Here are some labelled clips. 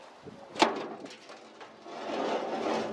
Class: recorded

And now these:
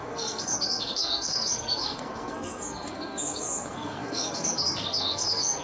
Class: remade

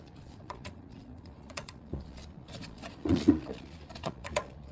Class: remade